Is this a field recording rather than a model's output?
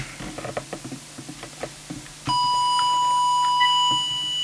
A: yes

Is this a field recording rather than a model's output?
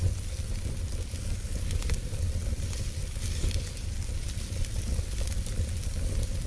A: no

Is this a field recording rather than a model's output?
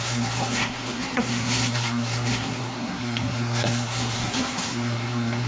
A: no